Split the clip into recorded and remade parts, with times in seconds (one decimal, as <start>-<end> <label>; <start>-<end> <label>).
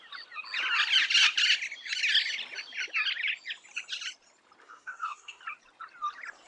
0.0-4.6 recorded; 4.6-5.4 remade; 5.4-6.5 recorded